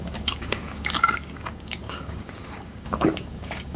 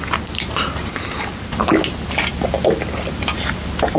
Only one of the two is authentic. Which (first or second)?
second